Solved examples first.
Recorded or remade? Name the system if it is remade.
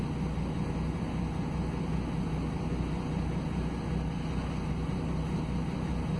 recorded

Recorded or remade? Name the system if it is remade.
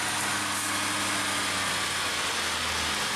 recorded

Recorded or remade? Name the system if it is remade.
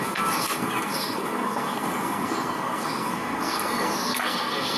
remade, codec, SNAC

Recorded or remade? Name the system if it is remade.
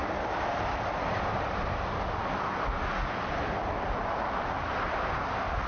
recorded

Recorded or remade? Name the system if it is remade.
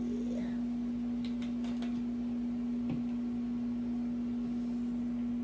recorded